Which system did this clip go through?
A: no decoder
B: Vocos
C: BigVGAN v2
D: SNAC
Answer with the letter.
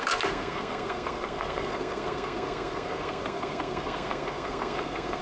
D